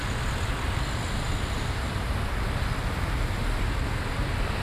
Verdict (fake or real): real